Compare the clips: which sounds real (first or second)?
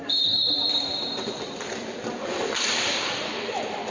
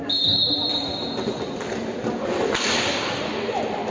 second